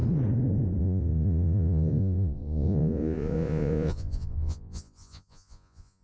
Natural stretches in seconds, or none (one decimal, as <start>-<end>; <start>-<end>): 0.0-0.8